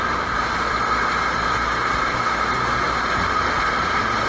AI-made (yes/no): no